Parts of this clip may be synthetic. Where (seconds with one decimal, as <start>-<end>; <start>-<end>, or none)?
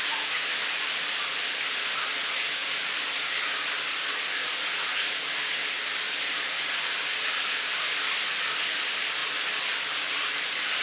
none